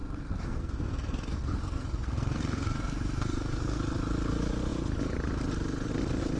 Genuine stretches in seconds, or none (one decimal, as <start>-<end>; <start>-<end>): 3.8-6.4

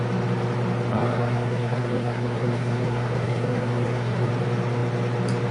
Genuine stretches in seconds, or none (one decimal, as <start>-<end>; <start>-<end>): 0.0-1.0; 4.3-5.5